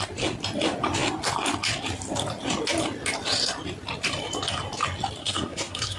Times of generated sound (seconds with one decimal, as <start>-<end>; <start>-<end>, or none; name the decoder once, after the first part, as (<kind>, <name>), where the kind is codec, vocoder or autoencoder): 5.2-6.0 (codec, SNAC)